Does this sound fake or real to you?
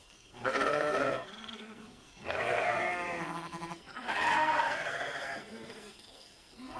fake